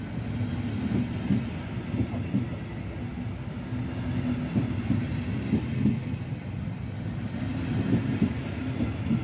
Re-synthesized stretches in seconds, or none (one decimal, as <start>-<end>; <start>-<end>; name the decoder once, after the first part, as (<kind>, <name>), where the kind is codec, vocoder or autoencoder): none